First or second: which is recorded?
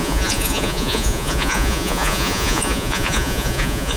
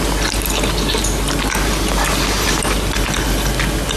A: second